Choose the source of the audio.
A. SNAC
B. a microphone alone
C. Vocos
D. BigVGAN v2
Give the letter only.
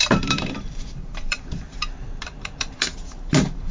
D